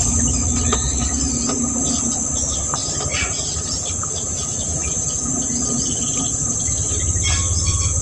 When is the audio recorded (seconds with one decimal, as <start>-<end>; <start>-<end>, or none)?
0.0-8.0